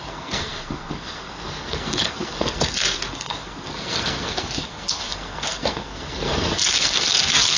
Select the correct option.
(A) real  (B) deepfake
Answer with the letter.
B